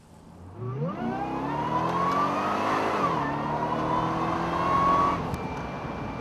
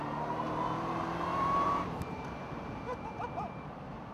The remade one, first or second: second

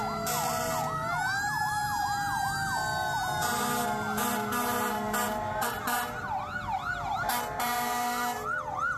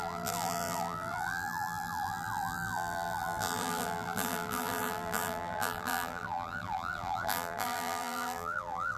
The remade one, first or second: second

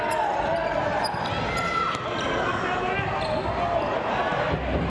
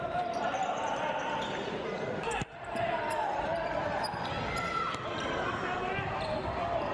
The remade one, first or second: second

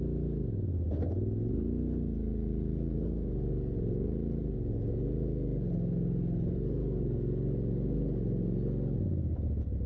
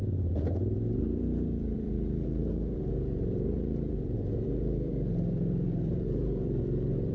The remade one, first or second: second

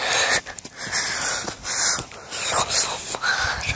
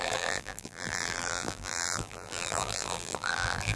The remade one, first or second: second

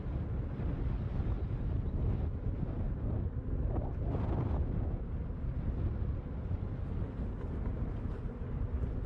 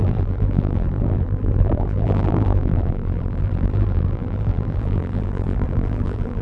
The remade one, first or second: second